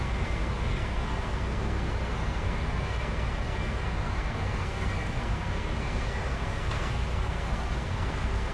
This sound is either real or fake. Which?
fake